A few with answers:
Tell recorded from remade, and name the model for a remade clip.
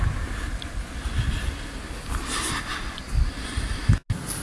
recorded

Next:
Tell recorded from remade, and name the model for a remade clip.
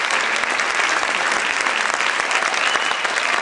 recorded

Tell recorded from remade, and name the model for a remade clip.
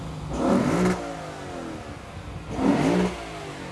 recorded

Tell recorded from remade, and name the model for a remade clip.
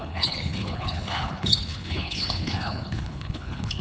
remade, codec, HILCodec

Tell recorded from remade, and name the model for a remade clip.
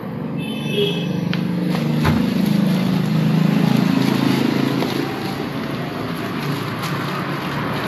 recorded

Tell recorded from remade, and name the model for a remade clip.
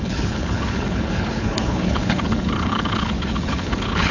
remade, codec, HILCodec